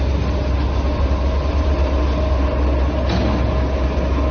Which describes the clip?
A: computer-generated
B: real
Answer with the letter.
B